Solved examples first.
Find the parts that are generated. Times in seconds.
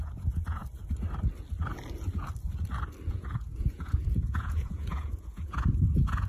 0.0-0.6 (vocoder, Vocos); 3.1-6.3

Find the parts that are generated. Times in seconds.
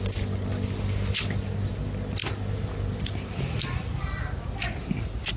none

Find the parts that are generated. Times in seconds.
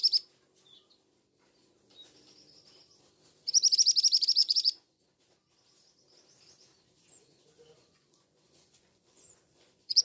4.4-5.0 (vocoder, Vocos); 7.0-10.0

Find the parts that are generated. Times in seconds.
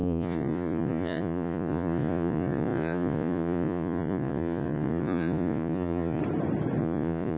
0.0-6.2 (vocoder, Vocos); 6.8-7.4